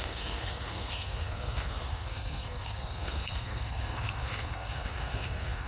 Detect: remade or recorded remade